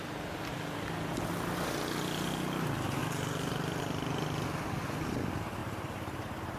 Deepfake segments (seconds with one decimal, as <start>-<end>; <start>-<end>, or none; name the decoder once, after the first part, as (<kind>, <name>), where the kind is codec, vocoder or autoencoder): 3.0-3.8 (vocoder, BigVGAN v2); 5.6-6.6